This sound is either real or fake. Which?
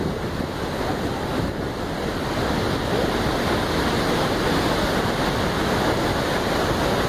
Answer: real